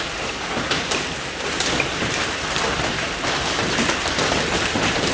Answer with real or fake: fake